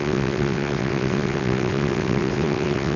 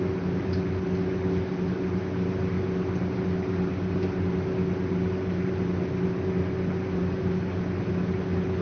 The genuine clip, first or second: second